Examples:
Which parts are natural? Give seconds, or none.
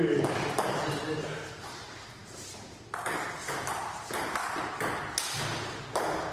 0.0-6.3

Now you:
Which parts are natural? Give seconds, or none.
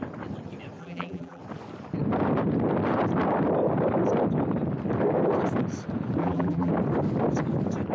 0.0-0.8; 1.4-6.2; 6.7-7.9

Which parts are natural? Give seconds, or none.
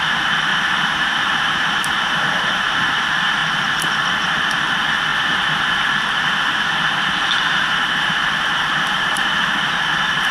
0.0-0.5; 2.6-5.1; 6.2-7.4; 9.6-10.3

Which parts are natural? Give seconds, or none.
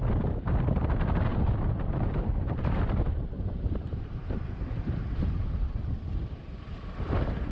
0.0-1.3; 5.8-7.5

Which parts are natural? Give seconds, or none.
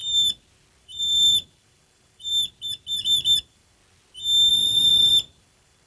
0.0-0.8; 2.3-3.4; 3.8-4.5